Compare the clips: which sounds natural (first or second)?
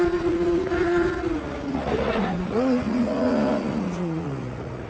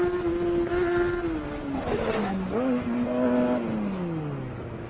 second